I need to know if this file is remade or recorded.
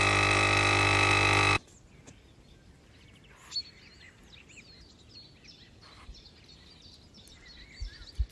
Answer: recorded